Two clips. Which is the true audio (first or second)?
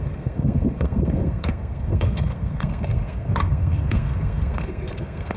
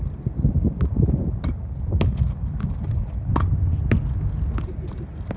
second